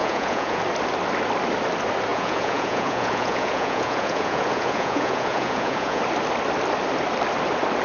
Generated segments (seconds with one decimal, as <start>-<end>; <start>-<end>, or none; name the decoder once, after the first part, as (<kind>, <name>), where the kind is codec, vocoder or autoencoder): 0.0-0.6 (vocoder, Vocos); 2.1-6.0